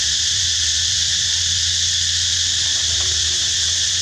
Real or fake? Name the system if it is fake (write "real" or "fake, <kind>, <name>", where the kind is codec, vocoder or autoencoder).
fake, vocoder, BigVGAN v2